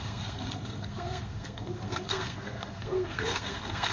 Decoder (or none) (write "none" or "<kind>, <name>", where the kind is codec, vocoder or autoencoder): codec, SNAC